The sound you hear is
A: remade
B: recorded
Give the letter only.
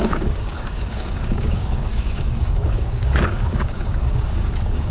A